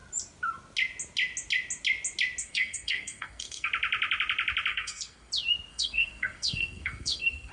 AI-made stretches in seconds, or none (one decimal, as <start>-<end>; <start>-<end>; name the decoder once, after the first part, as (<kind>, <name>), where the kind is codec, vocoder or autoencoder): 2.4-3.7 (codec, SNAC); 4.7-5.3; 5.7-7.5